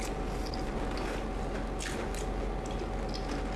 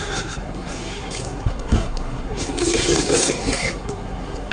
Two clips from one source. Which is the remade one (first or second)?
second